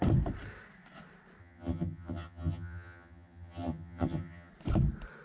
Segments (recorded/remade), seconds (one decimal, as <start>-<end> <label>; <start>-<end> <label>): 0.0-1.4 recorded; 1.4-4.5 remade; 4.5-5.2 recorded